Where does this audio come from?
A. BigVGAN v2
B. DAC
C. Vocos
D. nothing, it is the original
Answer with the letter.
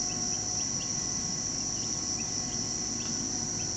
D